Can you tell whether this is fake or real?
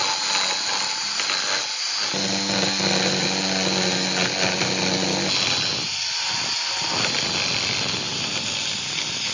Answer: real